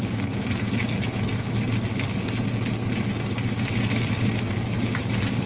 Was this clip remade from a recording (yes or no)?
no